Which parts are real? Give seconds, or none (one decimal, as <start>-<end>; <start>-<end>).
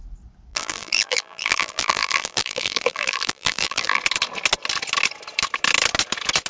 0.0-0.5; 4.0-6.5